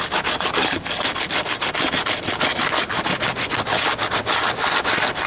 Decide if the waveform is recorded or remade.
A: recorded